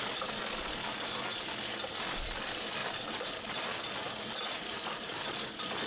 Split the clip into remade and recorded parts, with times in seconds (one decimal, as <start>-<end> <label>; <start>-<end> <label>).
0.0-2.8 recorded; 2.8-3.5 remade; 3.5-4.6 recorded; 4.6-5.4 remade; 5.4-5.9 recorded